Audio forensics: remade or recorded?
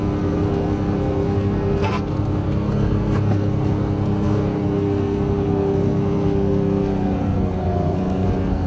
remade